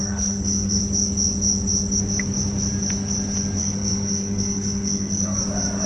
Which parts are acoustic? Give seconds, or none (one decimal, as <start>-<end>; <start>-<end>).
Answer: 0.8-3.6; 5.4-5.9